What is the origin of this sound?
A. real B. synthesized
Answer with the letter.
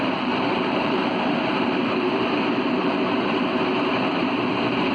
B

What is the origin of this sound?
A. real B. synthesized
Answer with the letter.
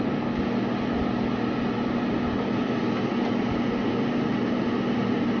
A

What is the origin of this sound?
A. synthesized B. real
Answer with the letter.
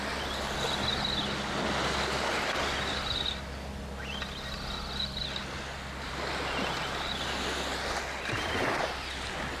B